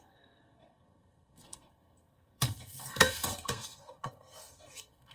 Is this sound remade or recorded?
remade